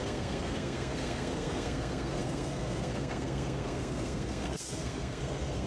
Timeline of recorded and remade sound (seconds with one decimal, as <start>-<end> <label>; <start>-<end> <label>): 0.0-5.7 remade